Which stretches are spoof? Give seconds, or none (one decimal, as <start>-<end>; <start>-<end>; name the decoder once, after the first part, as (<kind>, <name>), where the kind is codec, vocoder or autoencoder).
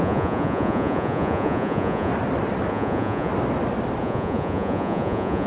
0.0-2.1 (vocoder, Vocos); 2.7-3.3; 4.0-5.5